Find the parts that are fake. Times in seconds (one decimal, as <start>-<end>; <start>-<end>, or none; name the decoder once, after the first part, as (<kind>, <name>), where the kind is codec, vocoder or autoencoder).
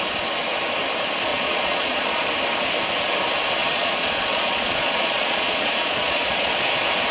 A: 1.3-2.3 (vocoder, Vocos); 3.6-6.5